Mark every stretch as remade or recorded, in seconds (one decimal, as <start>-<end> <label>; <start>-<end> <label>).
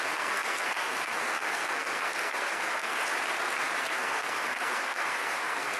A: 0.0-3.0 remade; 3.0-3.8 recorded; 3.8-5.8 remade